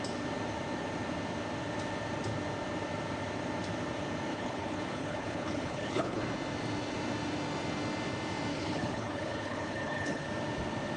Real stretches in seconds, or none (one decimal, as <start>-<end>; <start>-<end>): 0.0-4.3; 6.2-8.5; 10.3-11.0